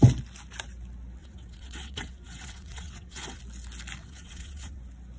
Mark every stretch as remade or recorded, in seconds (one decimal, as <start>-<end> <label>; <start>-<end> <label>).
0.0-1.2 recorded; 1.2-3.4 remade; 3.4-4.0 recorded; 4.0-4.8 remade; 4.8-5.2 recorded

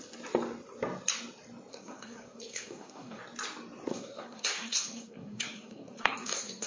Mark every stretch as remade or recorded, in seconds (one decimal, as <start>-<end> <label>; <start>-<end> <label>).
0.0-1.7 recorded; 1.7-3.2 remade; 3.2-3.9 recorded; 3.9-6.7 remade

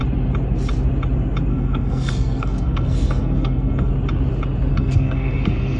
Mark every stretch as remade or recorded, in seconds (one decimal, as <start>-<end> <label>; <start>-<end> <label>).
0.0-1.5 recorded; 1.5-3.9 remade; 3.9-4.7 recorded; 4.7-5.8 remade

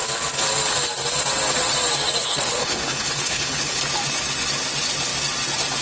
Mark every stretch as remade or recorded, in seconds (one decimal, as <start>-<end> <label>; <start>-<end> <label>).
0.0-2.2 recorded; 2.2-3.8 remade; 3.8-5.8 recorded

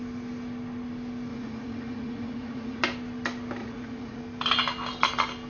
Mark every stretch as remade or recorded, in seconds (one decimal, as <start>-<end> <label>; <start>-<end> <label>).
0.0-1.3 recorded; 1.3-2.8 remade; 2.8-3.6 recorded; 3.6-4.2 remade; 4.2-5.5 recorded

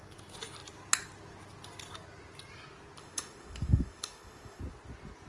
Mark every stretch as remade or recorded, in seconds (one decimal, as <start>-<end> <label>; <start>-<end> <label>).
0.0-3.0 recorded; 3.0-4.6 remade; 4.6-5.3 recorded

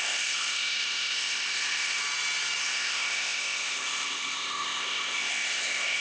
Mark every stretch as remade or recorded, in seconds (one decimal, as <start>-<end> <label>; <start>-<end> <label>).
0.0-2.0 remade; 2.0-2.6 recorded; 2.6-6.0 remade

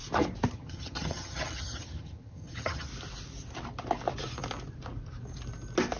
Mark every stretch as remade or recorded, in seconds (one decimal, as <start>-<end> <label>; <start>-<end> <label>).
0.0-0.5 recorded; 0.5-2.9 remade; 2.9-6.0 recorded